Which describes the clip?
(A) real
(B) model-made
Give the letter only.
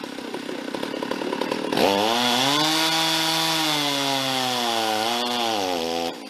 A